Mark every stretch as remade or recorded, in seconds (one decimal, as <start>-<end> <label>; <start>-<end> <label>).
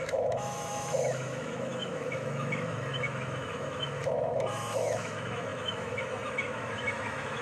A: 0.0-7.4 remade